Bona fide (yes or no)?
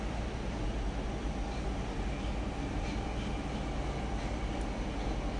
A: yes